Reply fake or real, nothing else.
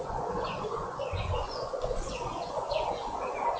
fake